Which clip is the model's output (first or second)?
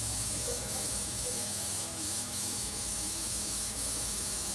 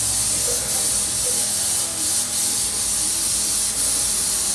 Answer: first